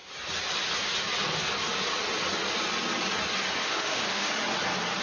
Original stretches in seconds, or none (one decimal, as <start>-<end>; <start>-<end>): 0.0-3.6; 4.3-5.0